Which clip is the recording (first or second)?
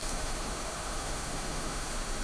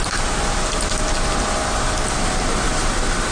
second